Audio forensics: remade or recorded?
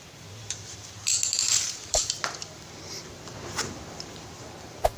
remade